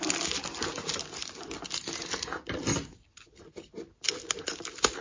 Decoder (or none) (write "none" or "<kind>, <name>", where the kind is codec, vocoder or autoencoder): none